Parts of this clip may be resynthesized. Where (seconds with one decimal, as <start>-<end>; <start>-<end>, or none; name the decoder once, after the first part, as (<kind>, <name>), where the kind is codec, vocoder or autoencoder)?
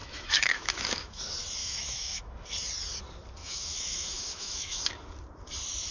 0.0-1.2 (autoencoder, DAC-VAE); 1.6-2.3; 3.4-4.9